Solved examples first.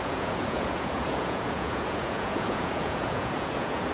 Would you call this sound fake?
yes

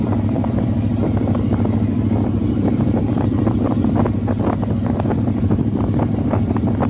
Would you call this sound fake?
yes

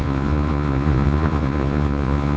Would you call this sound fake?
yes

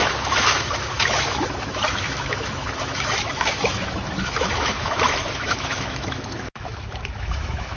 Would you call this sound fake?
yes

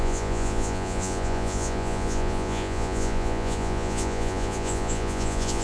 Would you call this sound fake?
yes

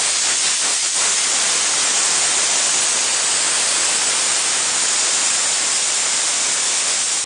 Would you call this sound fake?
no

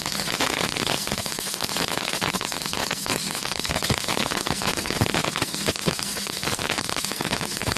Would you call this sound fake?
yes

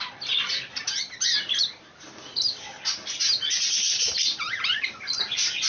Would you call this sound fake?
no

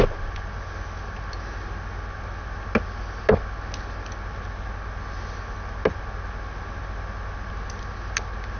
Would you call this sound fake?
no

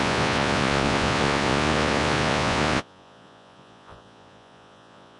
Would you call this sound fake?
yes